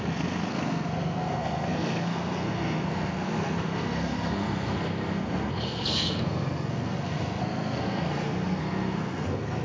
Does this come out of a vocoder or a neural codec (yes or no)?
yes